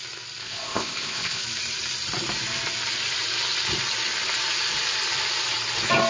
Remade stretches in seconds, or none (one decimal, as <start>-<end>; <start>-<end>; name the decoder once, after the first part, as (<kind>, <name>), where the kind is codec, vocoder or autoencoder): 0.4-1.4 (codec, ZipCodec)